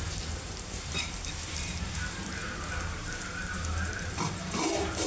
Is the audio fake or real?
fake